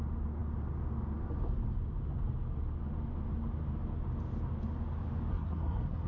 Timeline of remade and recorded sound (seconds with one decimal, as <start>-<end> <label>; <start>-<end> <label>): 0.0-5.3 recorded; 5.3-6.1 remade

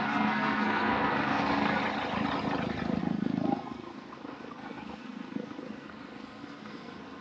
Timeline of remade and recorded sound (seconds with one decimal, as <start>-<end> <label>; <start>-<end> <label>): 0.0-1.8 remade; 1.8-3.0 recorded; 3.0-7.2 remade

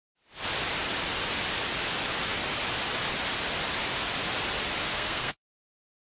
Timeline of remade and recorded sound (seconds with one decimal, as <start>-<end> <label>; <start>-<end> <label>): 0.0-4.9 recorded; 4.9-5.6 remade; 5.6-6.1 recorded

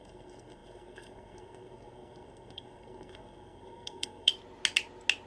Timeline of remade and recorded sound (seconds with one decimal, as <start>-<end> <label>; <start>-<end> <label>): 0.0-4.3 remade; 4.3-5.3 recorded

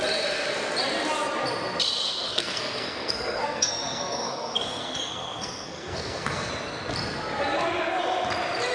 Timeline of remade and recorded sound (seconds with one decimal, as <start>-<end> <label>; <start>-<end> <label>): 0.0-2.0 recorded; 2.0-6.5 remade; 6.5-8.7 recorded

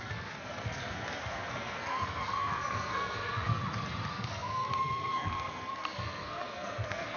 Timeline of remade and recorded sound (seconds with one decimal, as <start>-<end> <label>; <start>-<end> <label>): 0.0-3.6 remade; 3.6-4.1 recorded; 4.1-7.2 remade

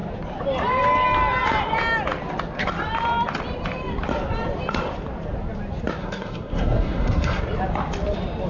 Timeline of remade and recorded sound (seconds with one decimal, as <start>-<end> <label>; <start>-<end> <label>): 0.0-6.0 recorded; 6.0-7.4 remade; 7.4-8.5 recorded

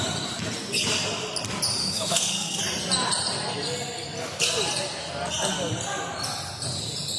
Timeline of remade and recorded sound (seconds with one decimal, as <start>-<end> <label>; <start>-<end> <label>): 0.0-1.8 recorded; 1.8-2.6 remade; 2.6-7.2 recorded